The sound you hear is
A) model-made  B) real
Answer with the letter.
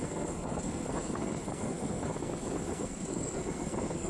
A